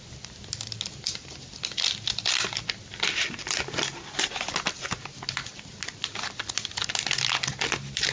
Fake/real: real